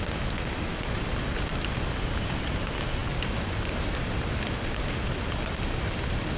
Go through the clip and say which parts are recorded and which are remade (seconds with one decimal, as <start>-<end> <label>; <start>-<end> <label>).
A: 0.0-6.4 recorded